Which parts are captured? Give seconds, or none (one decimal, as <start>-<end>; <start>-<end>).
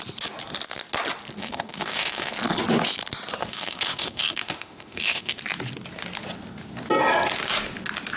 0.0-1.4; 2.3-3.4; 5.4-8.2